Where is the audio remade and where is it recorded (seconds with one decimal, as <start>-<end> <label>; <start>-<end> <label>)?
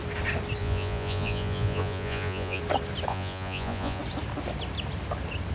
0.0-0.6 recorded; 0.6-2.6 remade; 2.6-3.1 recorded; 3.1-4.0 remade; 4.0-5.5 recorded